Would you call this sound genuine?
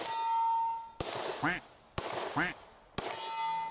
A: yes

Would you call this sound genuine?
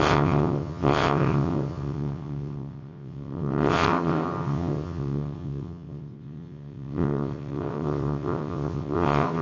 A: no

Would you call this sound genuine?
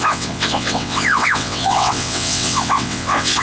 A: no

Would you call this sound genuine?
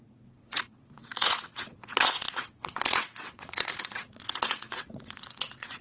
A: no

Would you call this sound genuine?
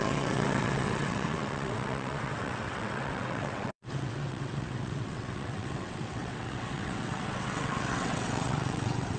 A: no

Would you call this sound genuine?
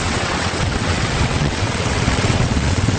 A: no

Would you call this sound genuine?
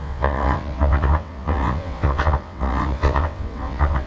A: no